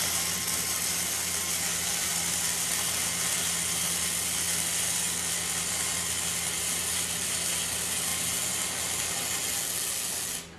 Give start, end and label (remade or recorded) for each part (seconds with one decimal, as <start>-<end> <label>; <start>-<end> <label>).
0.0-10.6 recorded